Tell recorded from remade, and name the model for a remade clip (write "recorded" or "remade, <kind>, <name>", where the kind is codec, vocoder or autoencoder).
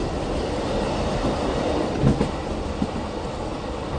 recorded